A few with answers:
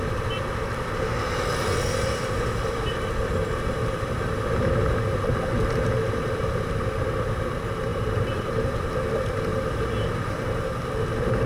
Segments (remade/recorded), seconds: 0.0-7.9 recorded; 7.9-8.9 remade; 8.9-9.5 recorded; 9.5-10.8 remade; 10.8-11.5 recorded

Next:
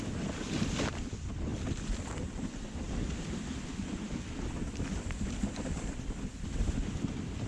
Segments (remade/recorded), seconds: 0.0-7.5 recorded

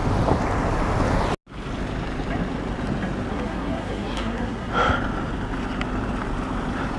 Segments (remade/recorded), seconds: 0.0-3.3 recorded; 3.3-4.7 remade; 4.7-7.0 recorded

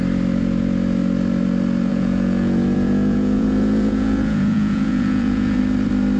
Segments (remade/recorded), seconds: 0.0-1.9 recorded; 1.9-5.6 remade; 5.6-6.2 recorded